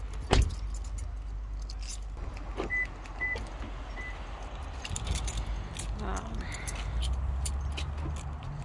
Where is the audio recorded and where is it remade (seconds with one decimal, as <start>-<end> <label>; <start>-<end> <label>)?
0.0-8.6 recorded